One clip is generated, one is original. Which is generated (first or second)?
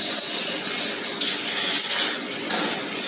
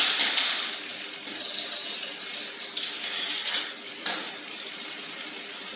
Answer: first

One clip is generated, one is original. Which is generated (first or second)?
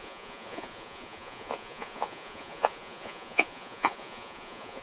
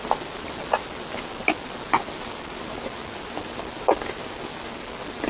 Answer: first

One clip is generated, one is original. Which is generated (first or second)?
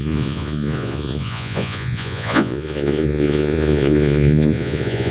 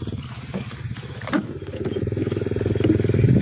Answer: first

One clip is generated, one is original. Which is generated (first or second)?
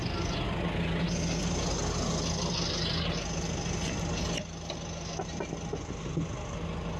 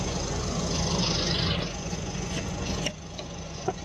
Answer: second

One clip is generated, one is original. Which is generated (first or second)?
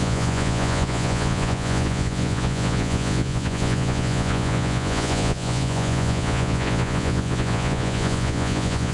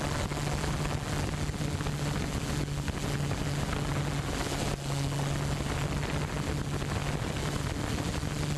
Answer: first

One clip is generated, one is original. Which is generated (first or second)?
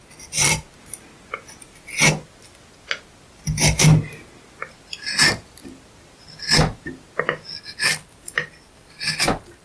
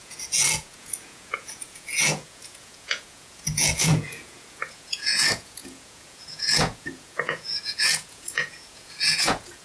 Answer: second